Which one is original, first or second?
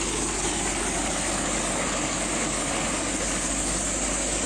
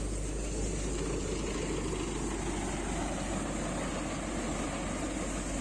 second